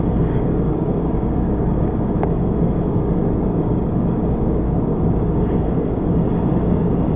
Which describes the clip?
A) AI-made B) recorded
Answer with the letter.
A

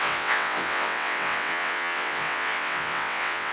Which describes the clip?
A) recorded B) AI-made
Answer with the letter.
B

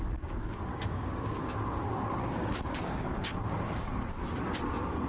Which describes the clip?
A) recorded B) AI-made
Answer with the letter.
B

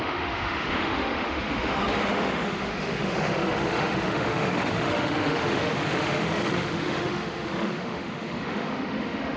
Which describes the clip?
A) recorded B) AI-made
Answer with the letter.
B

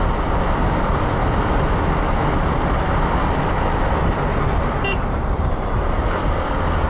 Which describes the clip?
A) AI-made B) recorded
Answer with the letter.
B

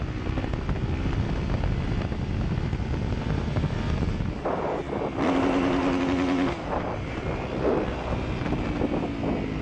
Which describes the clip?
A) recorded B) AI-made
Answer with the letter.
A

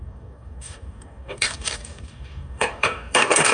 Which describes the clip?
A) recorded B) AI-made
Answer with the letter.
B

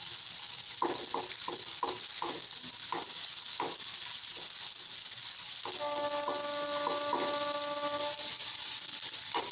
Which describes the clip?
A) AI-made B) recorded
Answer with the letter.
B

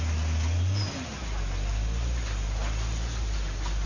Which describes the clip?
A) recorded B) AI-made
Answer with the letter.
A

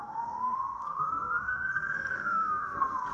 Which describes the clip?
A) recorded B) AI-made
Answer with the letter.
B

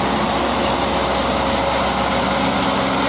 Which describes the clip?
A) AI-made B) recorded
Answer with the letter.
B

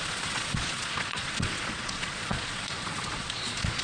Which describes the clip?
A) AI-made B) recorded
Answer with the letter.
A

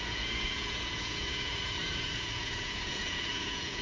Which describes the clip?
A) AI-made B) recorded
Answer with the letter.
A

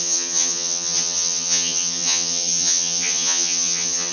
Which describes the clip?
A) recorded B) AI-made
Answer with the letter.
B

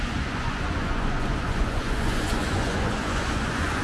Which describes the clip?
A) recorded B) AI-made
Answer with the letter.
B